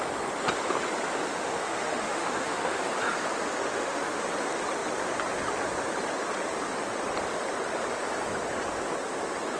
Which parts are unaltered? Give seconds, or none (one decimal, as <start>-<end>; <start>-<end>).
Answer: 0.0-1.3; 2.8-3.6; 4.2-9.6